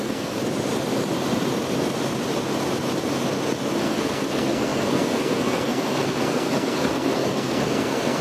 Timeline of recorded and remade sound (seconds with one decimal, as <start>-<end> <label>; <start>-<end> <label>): 0.0-0.4 remade; 0.4-3.8 recorded; 3.8-8.2 remade